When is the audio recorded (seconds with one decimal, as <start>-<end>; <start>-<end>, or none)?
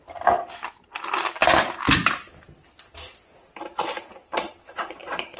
0.0-4.2